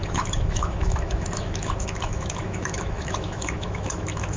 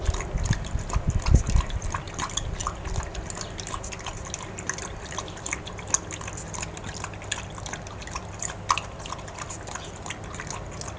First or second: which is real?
second